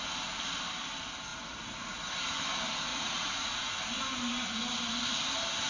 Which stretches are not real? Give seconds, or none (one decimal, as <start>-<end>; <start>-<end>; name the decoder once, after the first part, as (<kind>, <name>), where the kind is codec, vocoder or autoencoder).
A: 1.3-2.1 (vocoder, Vocos); 2.9-3.7